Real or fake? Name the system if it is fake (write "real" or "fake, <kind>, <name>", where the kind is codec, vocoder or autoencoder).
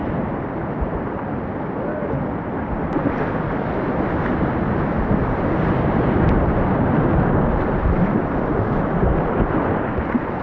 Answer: real